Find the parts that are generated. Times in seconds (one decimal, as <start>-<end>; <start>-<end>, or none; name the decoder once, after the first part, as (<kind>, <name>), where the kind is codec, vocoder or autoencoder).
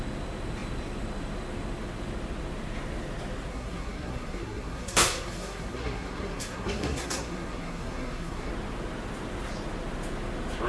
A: 3.5-8.5 (codec, SNAC)